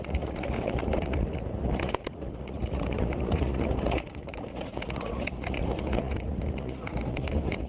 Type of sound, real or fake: fake